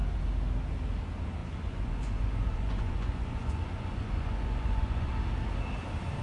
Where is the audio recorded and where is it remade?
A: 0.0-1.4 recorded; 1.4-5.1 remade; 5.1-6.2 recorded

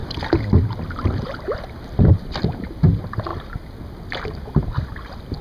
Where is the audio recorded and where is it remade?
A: 0.0-0.9 recorded; 0.9-3.3 remade; 3.3-4.6 recorded; 4.6-5.4 remade

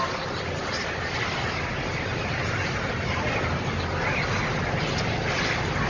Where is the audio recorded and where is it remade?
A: 0.0-5.9 recorded

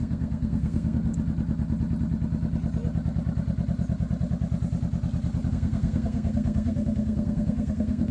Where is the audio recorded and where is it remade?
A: 0.0-1.1 remade; 1.1-5.5 recorded; 5.5-8.1 remade

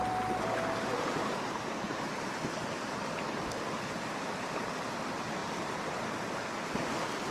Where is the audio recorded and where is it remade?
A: 0.0-5.4 recorded; 5.4-6.3 remade; 6.3-7.3 recorded

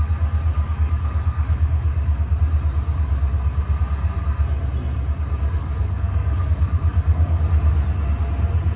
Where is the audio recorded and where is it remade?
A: 0.0-0.5 recorded; 0.5-2.4 remade; 2.4-5.6 recorded; 5.6-7.4 remade; 7.4-8.8 recorded

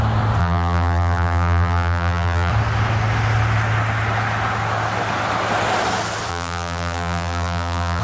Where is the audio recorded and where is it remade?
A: 0.0-0.4 recorded; 0.4-2.5 remade; 2.5-6.3 recorded; 6.3-8.0 remade

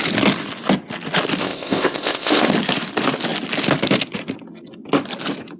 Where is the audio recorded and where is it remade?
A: 0.0-1.4 recorded; 1.4-2.5 remade; 2.5-5.6 recorded